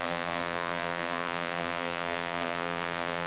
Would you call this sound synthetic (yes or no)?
yes